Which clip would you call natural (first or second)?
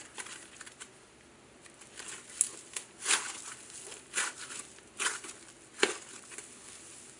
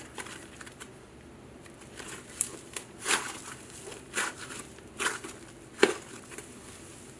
first